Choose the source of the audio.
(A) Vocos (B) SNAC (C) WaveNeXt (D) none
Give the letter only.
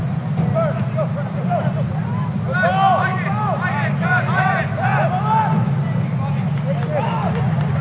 D